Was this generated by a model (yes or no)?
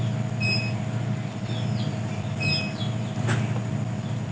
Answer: no